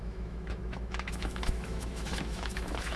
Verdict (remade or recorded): remade